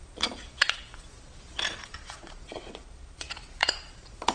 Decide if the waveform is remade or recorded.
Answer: remade